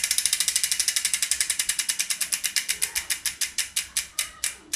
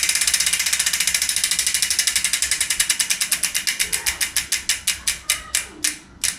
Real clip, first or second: second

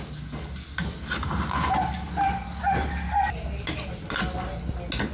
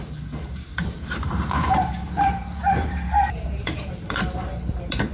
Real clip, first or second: first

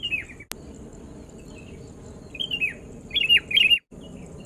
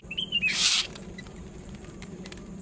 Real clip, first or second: first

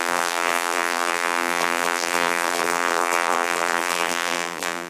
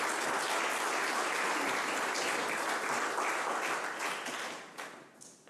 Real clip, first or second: second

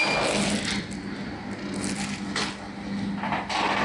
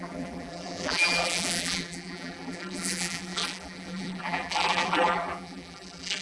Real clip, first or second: first